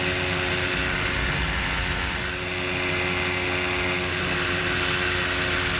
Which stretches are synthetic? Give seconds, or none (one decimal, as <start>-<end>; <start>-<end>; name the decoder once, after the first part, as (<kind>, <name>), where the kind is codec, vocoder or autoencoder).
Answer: 4.1-4.7 (vocoder, BigVGAN v2)